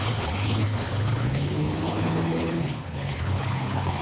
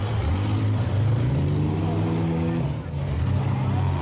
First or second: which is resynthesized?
first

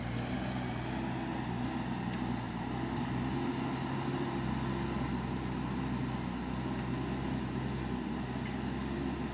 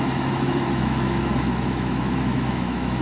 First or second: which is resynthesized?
second